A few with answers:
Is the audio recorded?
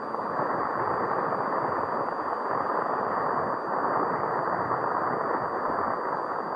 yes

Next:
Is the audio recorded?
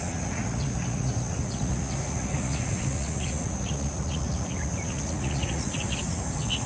no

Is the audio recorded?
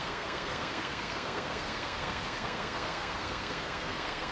no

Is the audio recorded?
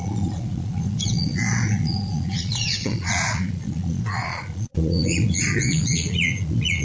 no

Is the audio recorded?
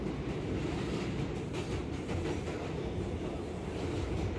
yes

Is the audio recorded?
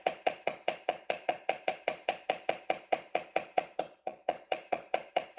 no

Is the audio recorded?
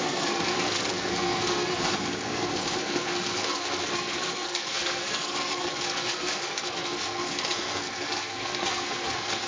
no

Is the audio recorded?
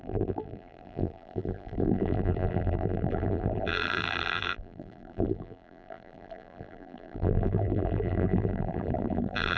no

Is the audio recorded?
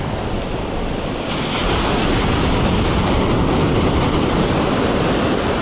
yes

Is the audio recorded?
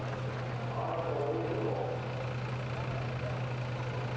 yes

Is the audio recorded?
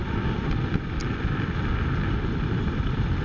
yes